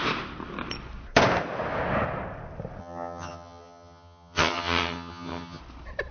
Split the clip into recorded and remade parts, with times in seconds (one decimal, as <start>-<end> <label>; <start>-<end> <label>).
0.0-2.8 recorded; 2.8-5.6 remade; 5.6-6.1 recorded